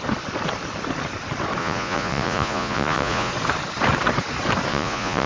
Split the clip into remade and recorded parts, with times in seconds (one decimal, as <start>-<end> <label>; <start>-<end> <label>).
0.0-1.6 recorded; 1.6-3.3 remade; 3.3-4.7 recorded; 4.7-5.3 remade